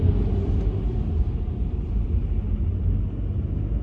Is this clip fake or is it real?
real